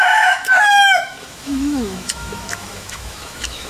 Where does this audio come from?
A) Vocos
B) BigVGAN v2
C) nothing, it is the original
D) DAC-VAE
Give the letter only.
D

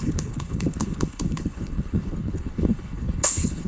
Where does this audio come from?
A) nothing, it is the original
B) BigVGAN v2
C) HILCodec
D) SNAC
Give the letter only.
C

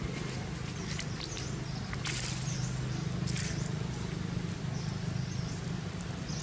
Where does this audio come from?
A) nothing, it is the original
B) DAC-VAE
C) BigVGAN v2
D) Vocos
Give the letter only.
A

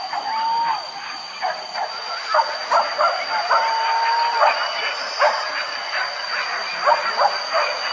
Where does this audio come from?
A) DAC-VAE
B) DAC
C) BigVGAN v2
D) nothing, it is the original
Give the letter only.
D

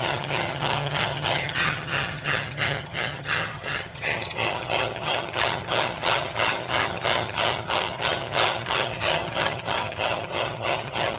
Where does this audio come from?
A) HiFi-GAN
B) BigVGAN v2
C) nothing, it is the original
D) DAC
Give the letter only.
A